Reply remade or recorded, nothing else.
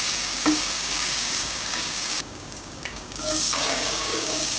remade